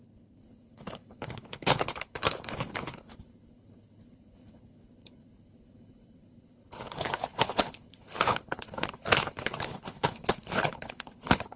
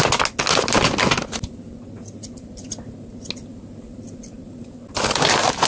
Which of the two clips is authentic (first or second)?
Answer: second